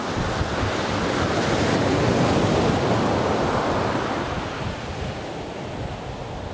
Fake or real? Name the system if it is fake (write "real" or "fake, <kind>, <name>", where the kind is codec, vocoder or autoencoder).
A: real